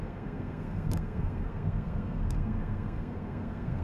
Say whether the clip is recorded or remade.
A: remade